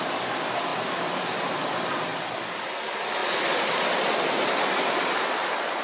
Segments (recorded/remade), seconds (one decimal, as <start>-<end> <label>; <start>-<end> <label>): 0.0-5.8 remade